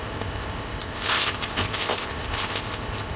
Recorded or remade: remade